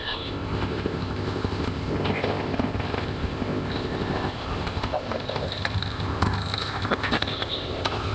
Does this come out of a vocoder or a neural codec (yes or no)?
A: yes